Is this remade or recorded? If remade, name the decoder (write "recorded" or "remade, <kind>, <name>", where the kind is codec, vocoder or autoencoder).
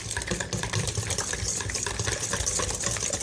recorded